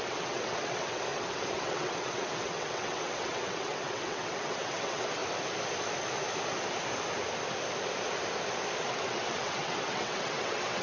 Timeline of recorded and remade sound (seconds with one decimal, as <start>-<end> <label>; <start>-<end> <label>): 0.0-5.2 remade; 5.2-8.8 recorded; 8.8-10.8 remade